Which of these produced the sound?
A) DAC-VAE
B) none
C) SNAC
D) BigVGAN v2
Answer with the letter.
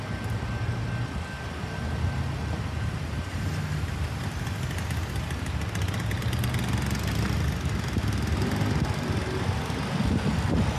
B